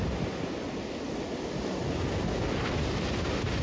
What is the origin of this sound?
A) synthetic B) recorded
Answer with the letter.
B